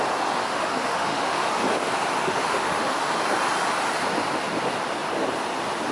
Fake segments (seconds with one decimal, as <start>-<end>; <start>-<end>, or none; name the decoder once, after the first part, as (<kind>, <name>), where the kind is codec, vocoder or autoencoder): 0.5-1.6 (autoencoder, DAC-VAE); 2.2-3.0